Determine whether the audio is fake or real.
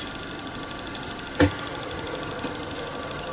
real